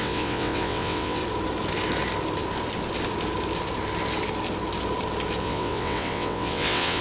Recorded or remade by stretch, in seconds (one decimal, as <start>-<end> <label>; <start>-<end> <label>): 0.0-1.2 remade; 1.2-5.4 recorded; 5.4-7.0 remade